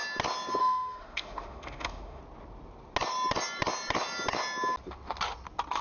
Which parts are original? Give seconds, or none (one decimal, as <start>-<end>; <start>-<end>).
0.0-0.6; 2.2-5.8